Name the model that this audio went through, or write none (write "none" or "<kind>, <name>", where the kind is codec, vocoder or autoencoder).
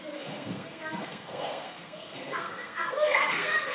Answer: codec, SNAC